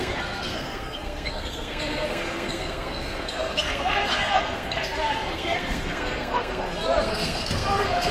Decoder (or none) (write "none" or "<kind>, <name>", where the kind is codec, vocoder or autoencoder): codec, SNAC